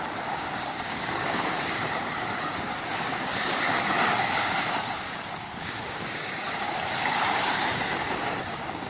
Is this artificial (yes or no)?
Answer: yes